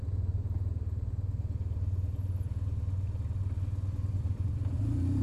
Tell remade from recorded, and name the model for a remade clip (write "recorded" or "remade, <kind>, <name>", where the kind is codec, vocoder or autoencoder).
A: recorded